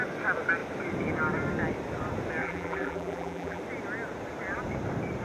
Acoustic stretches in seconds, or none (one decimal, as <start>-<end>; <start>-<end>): 0.0-2.4; 3.6-5.2